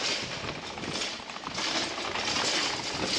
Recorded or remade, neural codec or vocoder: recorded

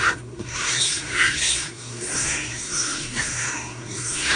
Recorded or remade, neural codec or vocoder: remade, codec, SNAC